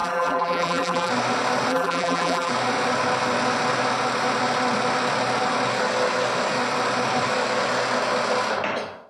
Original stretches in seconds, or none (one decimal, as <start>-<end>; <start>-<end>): 1.1-1.7; 2.5-9.1